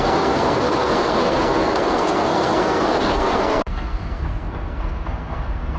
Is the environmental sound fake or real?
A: fake